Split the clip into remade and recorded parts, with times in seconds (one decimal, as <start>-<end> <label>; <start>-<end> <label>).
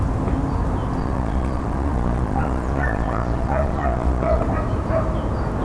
0.0-1.0 recorded; 1.0-4.4 remade; 4.4-5.6 recorded